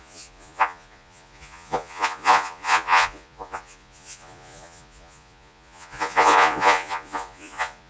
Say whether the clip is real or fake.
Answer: fake